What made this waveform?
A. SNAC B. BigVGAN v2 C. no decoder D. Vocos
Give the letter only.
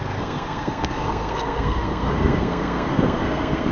A